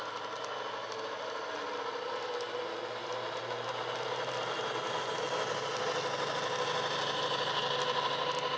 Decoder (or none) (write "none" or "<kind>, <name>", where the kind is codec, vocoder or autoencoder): none